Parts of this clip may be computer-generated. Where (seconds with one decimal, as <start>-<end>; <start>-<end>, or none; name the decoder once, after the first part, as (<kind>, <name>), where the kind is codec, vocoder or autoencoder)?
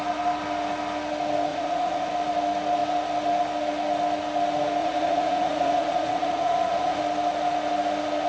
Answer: 1.5-2.1 (vocoder, Vocos); 4.8-7.0